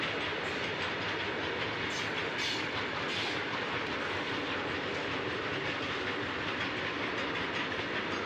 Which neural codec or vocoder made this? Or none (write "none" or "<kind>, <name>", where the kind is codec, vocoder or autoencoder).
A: none